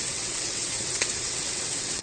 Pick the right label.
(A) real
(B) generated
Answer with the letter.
B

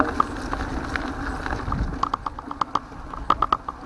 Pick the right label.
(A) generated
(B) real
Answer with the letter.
B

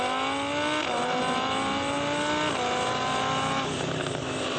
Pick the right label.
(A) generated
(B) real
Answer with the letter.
B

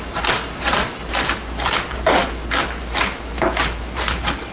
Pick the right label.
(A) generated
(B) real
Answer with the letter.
B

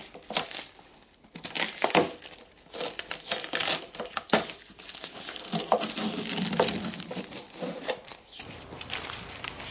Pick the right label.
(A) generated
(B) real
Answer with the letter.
B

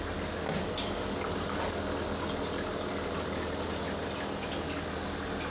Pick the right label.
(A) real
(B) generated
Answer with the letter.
A